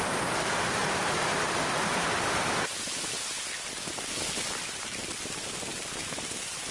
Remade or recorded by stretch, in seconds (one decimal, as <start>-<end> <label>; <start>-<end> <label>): 0.0-6.7 recorded